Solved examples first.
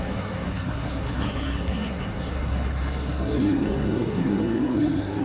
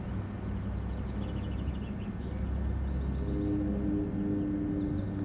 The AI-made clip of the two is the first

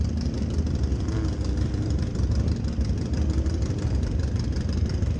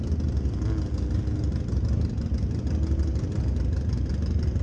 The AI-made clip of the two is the first